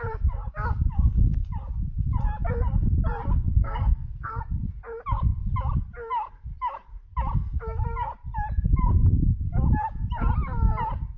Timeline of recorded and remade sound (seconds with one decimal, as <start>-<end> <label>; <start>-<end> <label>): 0.0-3.5 recorded; 3.5-4.4 remade; 4.4-11.2 recorded